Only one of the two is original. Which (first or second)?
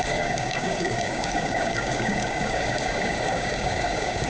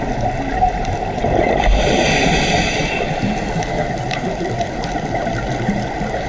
second